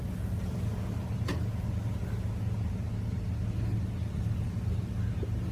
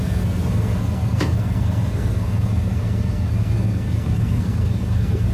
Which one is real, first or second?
first